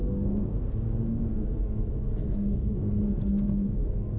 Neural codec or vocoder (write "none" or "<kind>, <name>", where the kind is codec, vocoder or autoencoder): codec, SNAC